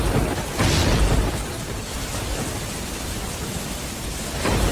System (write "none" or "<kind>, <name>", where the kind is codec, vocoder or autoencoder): none